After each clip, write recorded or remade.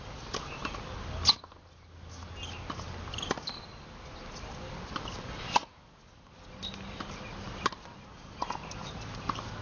recorded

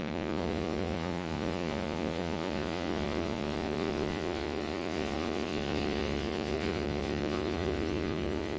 remade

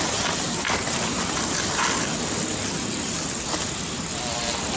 recorded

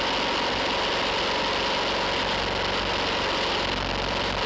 recorded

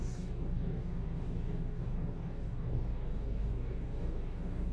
remade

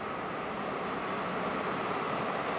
recorded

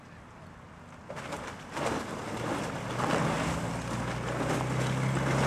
recorded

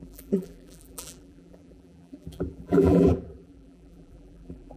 remade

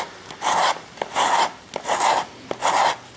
recorded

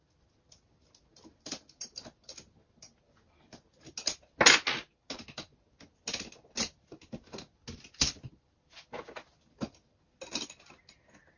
recorded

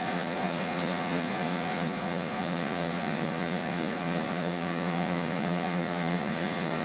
remade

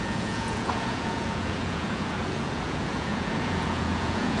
remade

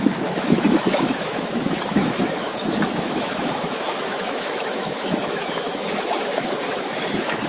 remade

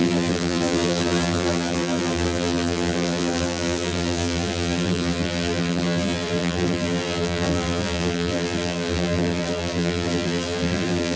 remade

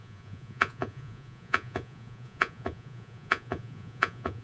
remade